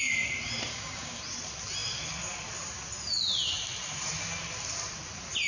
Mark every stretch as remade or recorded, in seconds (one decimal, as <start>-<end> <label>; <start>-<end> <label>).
0.0-0.7 recorded; 0.7-1.2 remade; 1.2-5.5 recorded